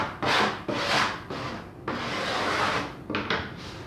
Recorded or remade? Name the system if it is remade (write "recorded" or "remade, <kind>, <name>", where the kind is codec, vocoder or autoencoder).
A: recorded